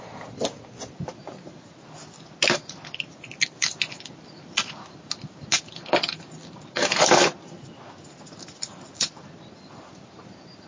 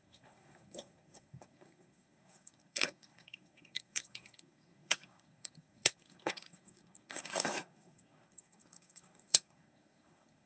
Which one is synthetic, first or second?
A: second